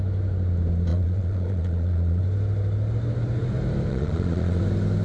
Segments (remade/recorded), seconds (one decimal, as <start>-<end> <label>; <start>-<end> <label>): 0.0-0.9 recorded; 0.9-2.2 remade; 2.2-3.9 recorded; 3.9-4.6 remade; 4.6-5.0 recorded